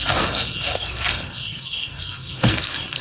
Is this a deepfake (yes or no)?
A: yes